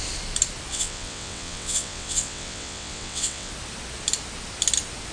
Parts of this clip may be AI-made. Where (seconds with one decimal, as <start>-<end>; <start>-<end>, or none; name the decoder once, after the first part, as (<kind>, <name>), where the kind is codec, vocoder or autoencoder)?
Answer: 0.7-3.5 (vocoder, WaveNeXt)